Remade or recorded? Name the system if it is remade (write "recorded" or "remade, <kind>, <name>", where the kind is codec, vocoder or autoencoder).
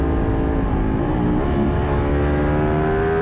recorded